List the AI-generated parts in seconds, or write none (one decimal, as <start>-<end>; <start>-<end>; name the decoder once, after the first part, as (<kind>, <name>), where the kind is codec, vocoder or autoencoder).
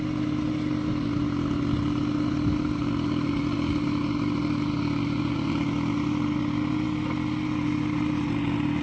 none